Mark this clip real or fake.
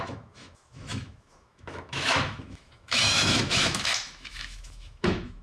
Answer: fake